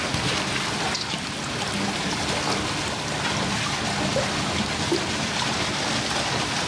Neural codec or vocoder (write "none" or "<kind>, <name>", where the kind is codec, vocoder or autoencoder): none